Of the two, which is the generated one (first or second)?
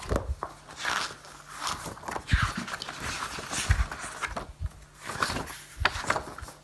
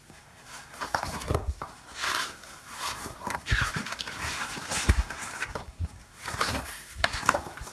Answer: second